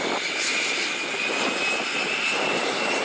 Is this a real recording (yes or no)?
yes